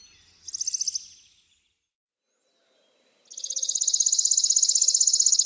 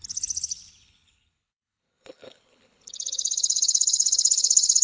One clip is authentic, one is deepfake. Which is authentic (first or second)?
first